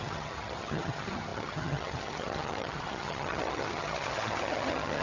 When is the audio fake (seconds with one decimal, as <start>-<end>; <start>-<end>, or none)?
0.0-5.0